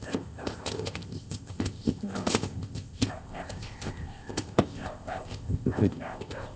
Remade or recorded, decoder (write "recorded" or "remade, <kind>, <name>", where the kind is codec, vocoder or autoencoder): remade, codec, ZipCodec